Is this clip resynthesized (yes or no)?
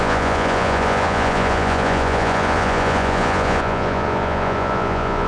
yes